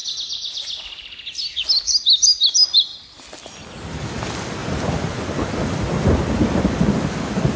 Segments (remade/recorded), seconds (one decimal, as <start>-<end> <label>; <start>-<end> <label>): 0.0-2.5 recorded; 2.5-2.9 remade; 2.9-3.9 recorded; 3.9-7.6 remade